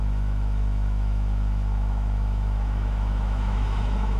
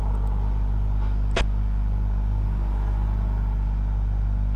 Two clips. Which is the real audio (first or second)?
second